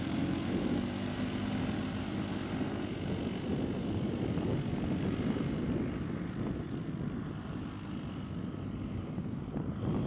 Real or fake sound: real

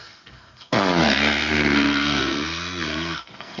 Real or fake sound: fake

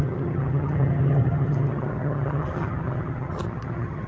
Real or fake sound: fake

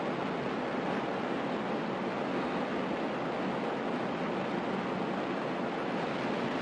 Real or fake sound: real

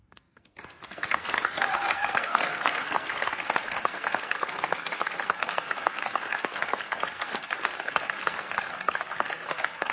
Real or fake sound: fake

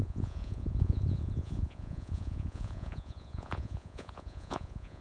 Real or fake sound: fake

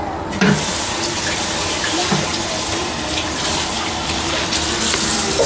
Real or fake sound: real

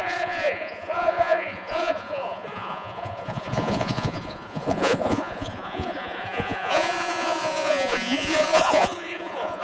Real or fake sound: fake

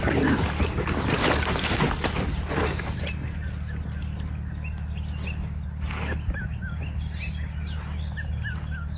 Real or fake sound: real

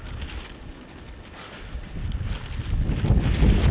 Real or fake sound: real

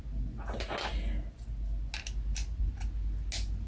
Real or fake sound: real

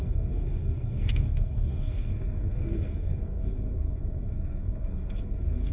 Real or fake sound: fake